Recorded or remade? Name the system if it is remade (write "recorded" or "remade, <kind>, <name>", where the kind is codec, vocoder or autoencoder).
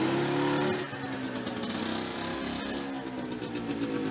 recorded